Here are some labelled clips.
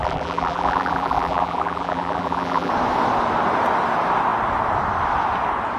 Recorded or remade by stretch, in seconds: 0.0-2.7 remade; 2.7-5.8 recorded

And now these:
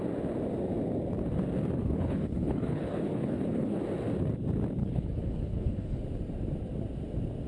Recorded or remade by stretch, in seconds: 0.0-1.8 recorded; 1.8-3.8 remade; 3.8-4.8 recorded; 4.8-6.0 remade; 6.0-7.5 recorded

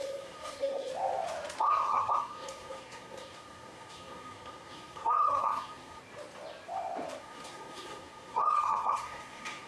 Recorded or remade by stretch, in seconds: 0.0-0.9 remade; 0.9-1.6 recorded; 1.6-6.0 remade; 6.0-7.2 recorded; 7.2-9.7 remade

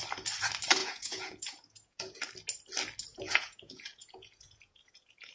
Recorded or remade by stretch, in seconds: 0.0-0.8 recorded; 0.8-2.2 remade; 2.2-3.1 recorded; 3.1-5.3 remade